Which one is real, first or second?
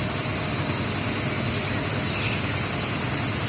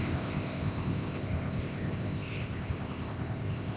first